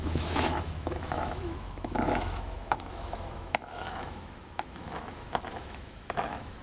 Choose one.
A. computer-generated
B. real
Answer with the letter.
A